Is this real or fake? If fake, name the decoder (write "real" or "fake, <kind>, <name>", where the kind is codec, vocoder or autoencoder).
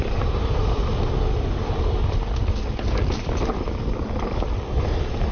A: real